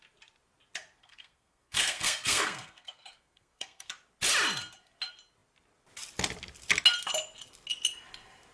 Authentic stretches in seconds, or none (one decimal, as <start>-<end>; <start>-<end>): 0.0-1.0; 3.9-8.5